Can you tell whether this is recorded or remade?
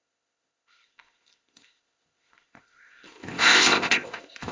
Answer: remade